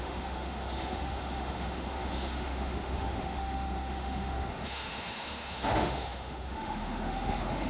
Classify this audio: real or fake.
fake